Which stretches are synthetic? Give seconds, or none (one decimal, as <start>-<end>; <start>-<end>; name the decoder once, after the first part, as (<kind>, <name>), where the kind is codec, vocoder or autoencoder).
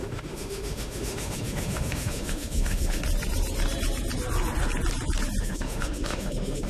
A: 0.0-3.0 (autoencoder, DAC-VAE); 5.4-6.7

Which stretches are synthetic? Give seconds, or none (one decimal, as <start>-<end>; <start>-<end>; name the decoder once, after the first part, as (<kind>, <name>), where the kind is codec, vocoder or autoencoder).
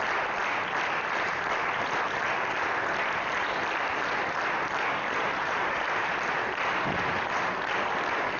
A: 5.2-5.8 (vocoder, BigVGAN v2)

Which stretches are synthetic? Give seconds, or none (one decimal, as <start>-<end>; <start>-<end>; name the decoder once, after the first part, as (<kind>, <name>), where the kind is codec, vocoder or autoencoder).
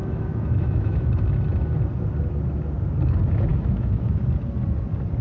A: 0.0-1.1 (autoencoder, DAC-VAE); 3.5-4.2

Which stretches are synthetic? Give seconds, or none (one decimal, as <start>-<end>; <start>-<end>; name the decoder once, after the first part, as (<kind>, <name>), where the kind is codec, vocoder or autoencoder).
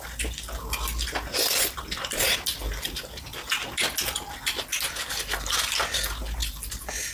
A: none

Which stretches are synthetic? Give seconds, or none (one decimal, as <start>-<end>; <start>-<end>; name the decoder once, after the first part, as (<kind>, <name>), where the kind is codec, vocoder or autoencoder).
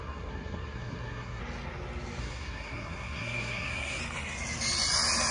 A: 0.0-1.4 (codec, SNAC); 2.2-4.0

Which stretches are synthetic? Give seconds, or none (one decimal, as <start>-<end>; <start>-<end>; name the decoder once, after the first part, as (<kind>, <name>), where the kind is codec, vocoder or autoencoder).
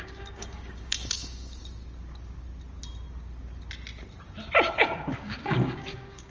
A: 0.0-1.6 (codec, DAC); 4.8-6.3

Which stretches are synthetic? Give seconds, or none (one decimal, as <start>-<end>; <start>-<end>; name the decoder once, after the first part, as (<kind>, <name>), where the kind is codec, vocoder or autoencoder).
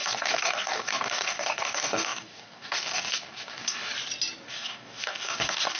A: 0.0-3.9 (codec, DAC); 4.5-5.8